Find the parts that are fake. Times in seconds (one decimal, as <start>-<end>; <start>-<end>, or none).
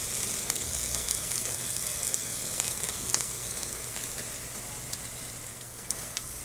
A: 0.4-4.0; 5.5-6.4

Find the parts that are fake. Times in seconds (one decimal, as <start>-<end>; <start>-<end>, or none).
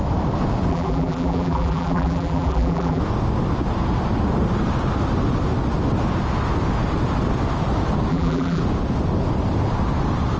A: 0.7-3.0; 8.1-8.6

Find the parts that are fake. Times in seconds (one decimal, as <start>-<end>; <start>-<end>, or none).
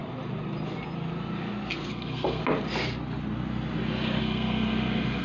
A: 1.9-2.4; 4.2-5.2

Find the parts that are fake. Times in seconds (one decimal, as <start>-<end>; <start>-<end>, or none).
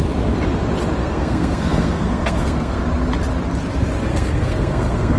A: 1.0-2.8; 4.1-5.2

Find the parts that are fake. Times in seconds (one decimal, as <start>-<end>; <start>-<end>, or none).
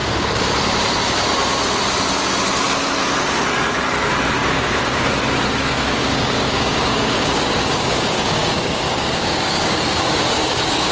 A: 4.4-5.1; 5.6-10.9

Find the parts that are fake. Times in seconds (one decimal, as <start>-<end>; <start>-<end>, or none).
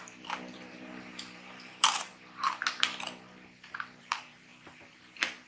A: 0.0-2.1; 4.0-4.5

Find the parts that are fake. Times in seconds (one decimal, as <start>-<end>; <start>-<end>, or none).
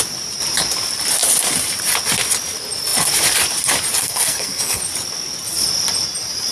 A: 4.0-4.8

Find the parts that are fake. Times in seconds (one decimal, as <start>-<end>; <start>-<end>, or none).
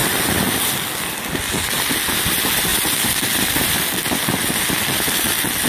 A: none